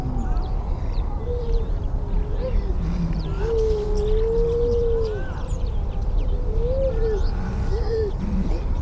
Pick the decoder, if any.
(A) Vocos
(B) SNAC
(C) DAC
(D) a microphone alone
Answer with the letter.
D